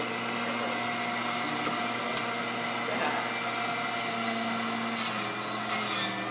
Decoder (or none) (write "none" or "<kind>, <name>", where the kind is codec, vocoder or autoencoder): none